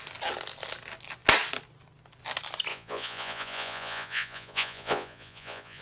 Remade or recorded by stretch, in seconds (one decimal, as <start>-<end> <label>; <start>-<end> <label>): 0.0-2.7 recorded; 2.7-5.8 remade